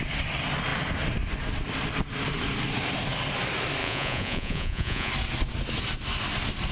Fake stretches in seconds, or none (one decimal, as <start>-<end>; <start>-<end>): 3.8-5.1